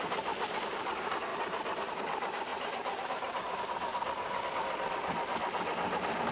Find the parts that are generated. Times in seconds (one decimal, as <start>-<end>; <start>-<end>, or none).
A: 1.3-1.9; 2.5-3.4; 3.9-4.4